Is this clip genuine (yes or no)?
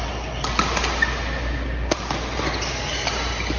yes